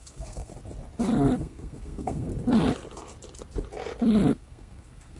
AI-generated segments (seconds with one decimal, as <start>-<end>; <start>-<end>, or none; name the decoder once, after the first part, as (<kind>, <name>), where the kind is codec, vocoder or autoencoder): 0.0-0.5 (codec, SNAC); 1.4-2.3; 4.3-5.2